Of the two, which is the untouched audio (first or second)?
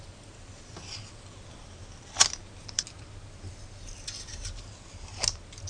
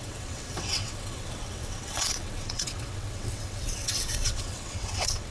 first